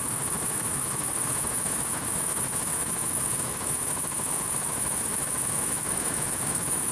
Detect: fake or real fake